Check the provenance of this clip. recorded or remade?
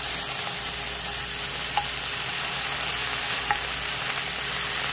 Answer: recorded